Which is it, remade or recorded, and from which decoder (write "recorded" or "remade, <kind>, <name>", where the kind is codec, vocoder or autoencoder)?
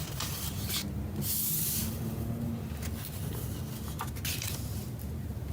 recorded